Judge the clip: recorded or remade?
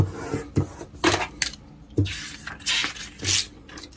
recorded